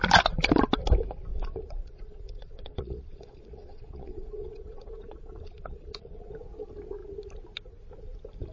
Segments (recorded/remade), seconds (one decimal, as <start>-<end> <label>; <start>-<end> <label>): 0.0-1.3 recorded; 1.3-6.3 remade; 6.3-8.5 recorded